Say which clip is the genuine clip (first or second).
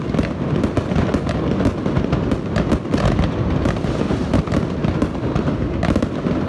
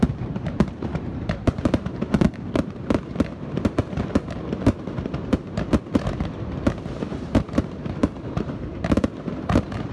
first